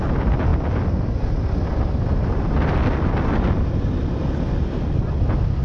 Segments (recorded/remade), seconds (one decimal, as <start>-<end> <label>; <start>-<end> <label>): 0.0-5.6 recorded